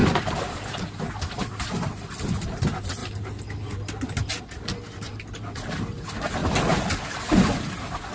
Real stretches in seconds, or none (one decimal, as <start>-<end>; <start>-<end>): 0.0-8.1